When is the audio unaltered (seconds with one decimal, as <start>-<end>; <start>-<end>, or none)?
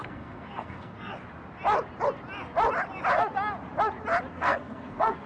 1.1-4.3